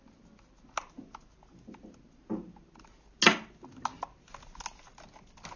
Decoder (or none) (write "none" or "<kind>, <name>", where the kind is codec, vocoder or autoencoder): none